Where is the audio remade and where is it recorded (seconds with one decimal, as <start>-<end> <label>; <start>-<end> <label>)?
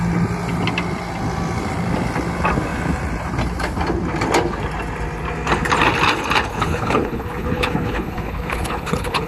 0.0-6.5 recorded; 6.5-9.3 remade